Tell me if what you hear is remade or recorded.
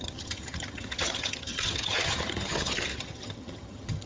remade